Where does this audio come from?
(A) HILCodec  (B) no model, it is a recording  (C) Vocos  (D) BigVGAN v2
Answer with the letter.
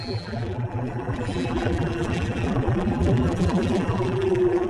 D